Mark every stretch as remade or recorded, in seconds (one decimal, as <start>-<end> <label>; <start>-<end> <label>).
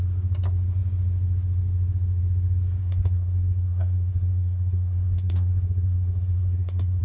0.0-2.8 recorded; 2.8-7.0 remade